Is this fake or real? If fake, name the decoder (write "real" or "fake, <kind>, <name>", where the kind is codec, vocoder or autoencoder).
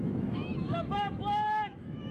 fake, autoencoder, DAC-VAE